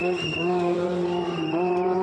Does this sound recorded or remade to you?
remade